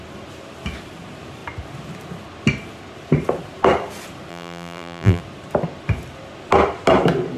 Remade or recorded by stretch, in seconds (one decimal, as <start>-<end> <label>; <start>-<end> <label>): 0.0-4.3 recorded; 4.3-5.2 remade; 5.2-7.4 recorded